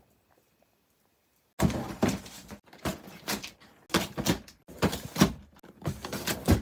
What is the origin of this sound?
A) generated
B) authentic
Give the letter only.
B